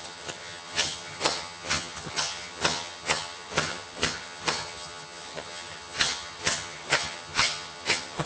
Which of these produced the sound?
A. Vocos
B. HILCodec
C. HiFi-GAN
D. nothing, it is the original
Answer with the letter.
C